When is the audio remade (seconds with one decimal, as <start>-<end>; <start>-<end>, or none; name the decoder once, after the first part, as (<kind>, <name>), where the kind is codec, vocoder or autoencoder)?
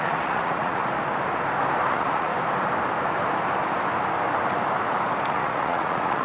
0.0-0.8 (vocoder, Vocos); 1.9-2.3; 5.3-6.2